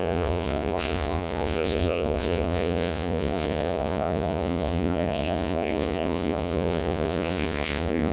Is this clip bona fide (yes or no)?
no